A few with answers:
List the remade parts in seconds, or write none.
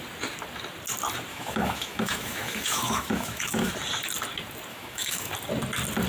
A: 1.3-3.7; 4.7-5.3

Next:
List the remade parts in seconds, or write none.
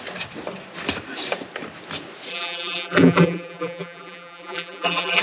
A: 2.3-5.2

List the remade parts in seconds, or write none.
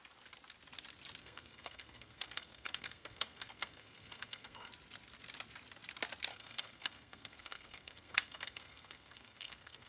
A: 1.2-4.7; 6.3-9.9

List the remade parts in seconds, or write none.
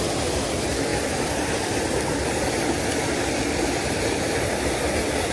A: none